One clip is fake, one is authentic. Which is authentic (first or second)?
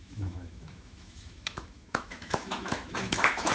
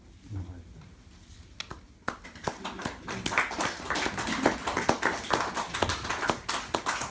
second